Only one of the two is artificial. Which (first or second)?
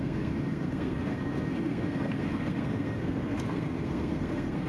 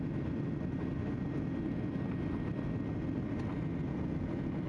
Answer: first